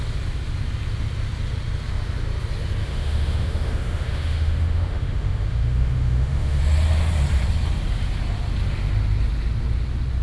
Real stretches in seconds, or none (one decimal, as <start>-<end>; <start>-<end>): 0.0-2.8; 6.6-10.2